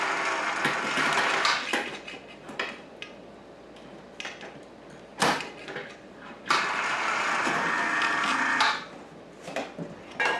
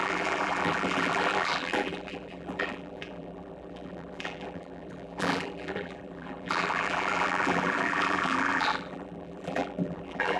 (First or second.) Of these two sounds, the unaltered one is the first